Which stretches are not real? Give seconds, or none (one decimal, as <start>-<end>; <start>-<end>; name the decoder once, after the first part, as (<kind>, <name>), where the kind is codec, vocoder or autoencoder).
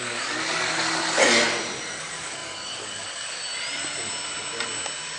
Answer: 0.0-1.2 (codec, DAC); 2.0-3.4